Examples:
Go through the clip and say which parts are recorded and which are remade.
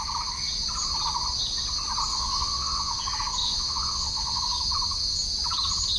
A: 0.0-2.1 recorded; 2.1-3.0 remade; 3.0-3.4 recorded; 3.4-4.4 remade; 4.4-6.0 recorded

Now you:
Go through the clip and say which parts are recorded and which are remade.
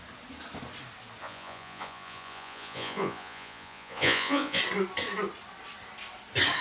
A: 0.0-1.2 recorded; 1.2-4.6 remade; 4.6-6.6 recorded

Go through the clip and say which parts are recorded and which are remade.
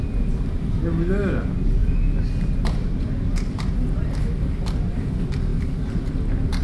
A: 0.0-6.6 recorded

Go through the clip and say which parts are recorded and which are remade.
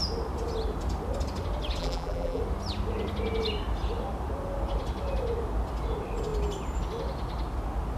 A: 0.0-1.8 recorded; 1.8-2.4 remade; 2.4-8.0 recorded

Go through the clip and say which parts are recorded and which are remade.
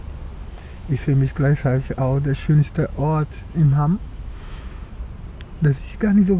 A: 0.0-0.7 recorded; 0.7-2.0 remade; 2.0-2.9 recorded; 2.9-4.9 remade; 4.9-6.4 recorded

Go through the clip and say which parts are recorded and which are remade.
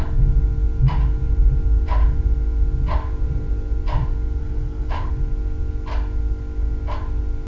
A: 0.0-4.4 recorded; 4.4-5.1 remade; 5.1-7.5 recorded